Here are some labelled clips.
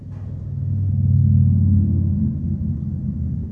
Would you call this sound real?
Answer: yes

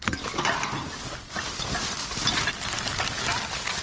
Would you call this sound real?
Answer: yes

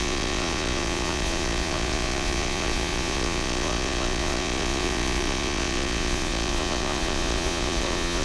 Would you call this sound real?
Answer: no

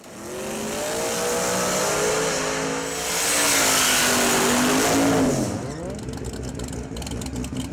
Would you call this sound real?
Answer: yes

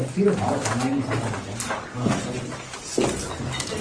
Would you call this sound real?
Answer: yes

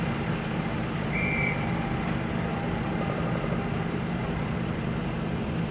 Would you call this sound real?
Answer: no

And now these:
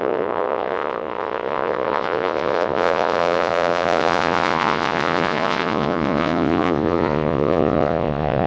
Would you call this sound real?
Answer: no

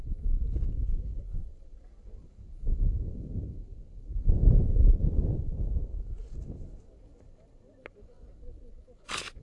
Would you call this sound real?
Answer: yes